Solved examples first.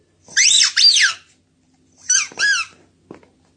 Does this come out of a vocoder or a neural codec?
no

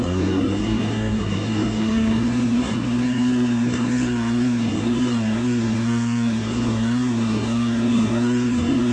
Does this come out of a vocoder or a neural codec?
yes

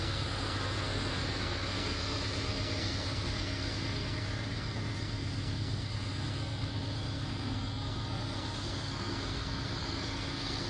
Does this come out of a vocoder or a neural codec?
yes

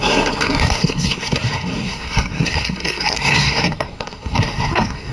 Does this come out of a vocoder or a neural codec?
yes